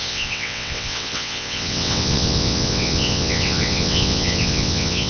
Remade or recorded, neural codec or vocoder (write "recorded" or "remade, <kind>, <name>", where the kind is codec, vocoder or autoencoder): remade, vocoder, WaveNeXt